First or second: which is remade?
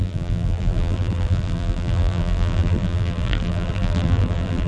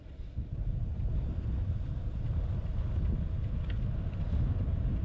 first